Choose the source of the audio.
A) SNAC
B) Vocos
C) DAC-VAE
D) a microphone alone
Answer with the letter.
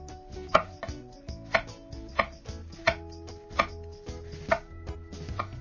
D